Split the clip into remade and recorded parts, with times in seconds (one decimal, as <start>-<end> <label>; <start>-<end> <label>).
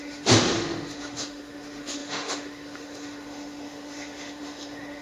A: 0.0-5.0 remade